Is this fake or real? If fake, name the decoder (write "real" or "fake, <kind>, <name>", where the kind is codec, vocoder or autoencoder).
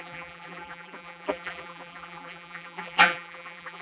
fake, vocoder, BigVGAN v2